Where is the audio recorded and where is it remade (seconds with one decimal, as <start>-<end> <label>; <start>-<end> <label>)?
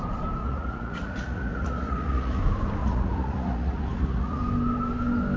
0.0-0.4 recorded; 0.4-2.4 remade; 2.4-2.8 recorded; 2.8-4.4 remade; 4.4-5.4 recorded